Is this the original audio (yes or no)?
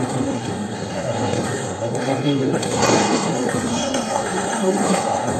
no